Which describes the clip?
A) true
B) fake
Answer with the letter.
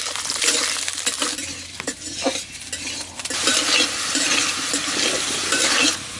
A